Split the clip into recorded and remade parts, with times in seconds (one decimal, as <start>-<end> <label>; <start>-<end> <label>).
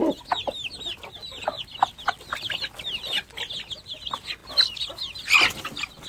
0.0-6.1 recorded